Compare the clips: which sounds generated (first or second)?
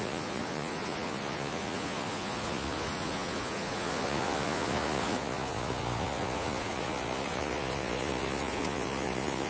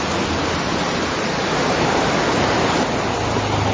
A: first